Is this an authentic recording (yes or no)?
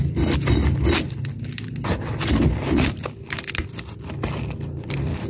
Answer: yes